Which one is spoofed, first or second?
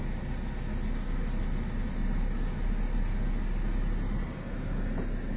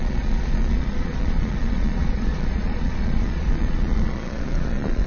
second